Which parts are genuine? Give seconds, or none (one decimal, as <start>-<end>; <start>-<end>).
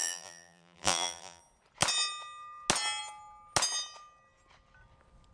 1.4-5.3